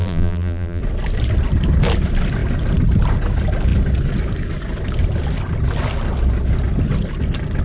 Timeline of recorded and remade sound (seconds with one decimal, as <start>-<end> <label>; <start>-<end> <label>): 0.0-0.8 remade; 0.8-7.6 recorded